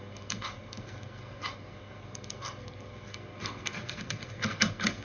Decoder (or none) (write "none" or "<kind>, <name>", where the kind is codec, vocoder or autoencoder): codec, SNAC